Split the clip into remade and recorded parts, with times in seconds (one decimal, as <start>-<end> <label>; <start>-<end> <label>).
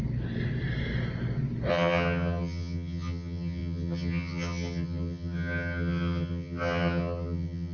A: 0.0-1.7 recorded; 1.7-7.7 remade